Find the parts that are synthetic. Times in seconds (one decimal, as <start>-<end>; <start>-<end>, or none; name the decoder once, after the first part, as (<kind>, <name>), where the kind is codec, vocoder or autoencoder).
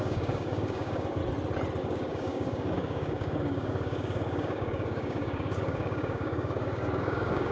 0.0-1.2 (codec, DAC); 1.8-7.5